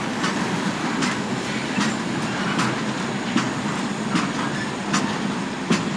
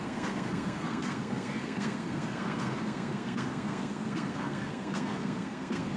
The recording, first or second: first